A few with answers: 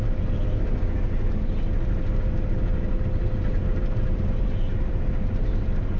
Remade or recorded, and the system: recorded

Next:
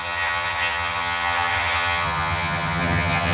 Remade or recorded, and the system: remade, vocoder, HiFi-GAN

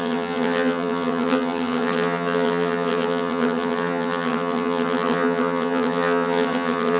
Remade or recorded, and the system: remade, vocoder, HiFi-GAN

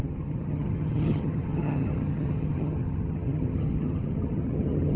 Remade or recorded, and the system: remade, vocoder, HiFi-GAN